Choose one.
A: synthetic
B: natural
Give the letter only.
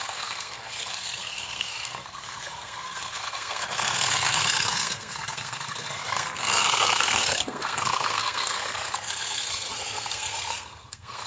A